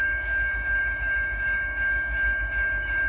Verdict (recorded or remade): remade